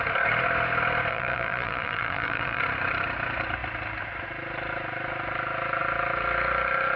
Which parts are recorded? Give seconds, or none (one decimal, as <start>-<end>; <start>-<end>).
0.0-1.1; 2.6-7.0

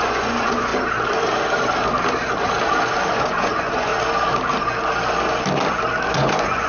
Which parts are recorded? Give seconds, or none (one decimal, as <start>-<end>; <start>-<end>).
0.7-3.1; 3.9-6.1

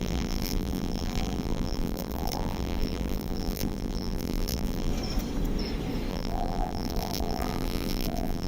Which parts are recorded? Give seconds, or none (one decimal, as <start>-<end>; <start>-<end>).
4.9-6.1

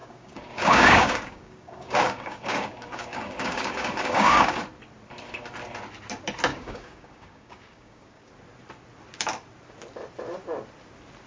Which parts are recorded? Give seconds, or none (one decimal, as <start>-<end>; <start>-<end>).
4.6-6.5; 8.3-11.3

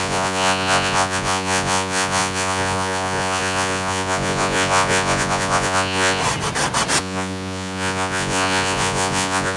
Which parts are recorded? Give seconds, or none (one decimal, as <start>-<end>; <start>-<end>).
6.2-7.0